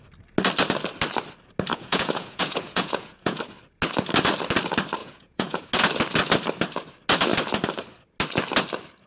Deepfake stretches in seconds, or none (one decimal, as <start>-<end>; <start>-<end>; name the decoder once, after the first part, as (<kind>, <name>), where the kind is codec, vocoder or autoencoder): 1.7-3.4 (vocoder, Vocos); 5.0-5.6